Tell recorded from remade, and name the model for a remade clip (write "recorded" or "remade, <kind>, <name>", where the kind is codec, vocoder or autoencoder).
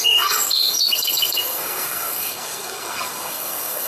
remade, codec, SNAC